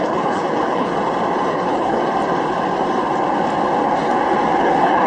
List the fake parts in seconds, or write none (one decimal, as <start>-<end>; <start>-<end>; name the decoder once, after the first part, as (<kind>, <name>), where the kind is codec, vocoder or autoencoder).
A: 0.0-0.9 (codec, HILCodec); 1.5-2.0; 4.6-5.1